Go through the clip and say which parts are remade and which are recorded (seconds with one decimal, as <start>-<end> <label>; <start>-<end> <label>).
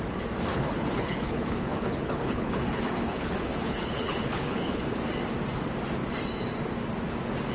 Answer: 0.0-0.5 recorded; 0.5-5.0 remade; 5.0-7.5 recorded